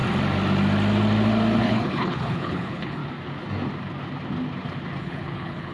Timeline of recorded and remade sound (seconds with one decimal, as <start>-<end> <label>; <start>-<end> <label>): 0.0-1.6 recorded; 1.6-3.0 remade; 3.0-5.0 recorded; 5.0-5.7 remade